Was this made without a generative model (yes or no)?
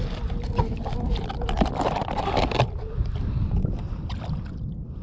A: yes